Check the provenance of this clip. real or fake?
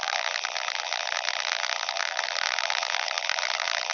fake